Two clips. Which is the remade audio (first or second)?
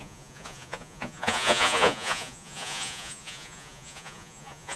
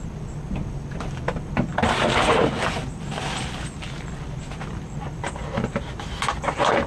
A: first